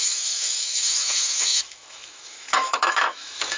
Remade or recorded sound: remade